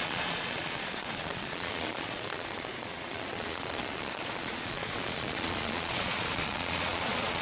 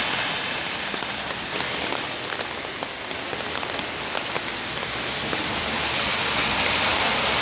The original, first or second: second